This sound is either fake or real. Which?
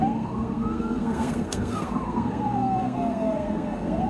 fake